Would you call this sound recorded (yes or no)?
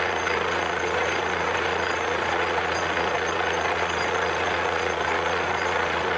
no